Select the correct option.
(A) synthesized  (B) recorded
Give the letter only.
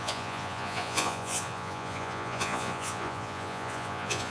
A